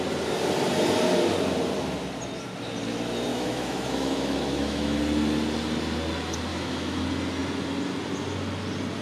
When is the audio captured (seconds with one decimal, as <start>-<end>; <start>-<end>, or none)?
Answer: 0.0-3.3; 5.0-6.5; 7.0-9.0